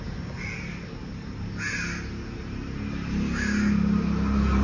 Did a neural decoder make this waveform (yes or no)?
no